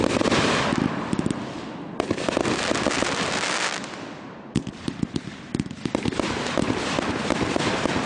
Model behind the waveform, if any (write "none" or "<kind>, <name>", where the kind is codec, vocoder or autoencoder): none